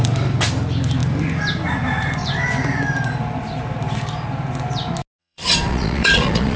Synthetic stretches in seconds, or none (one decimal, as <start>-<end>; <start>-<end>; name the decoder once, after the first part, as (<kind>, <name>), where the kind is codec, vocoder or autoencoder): 5.2-6.6 (vocoder, Vocos)